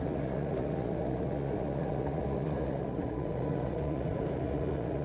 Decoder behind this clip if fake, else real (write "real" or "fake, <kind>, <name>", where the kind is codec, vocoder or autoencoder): fake, vocoder, Vocos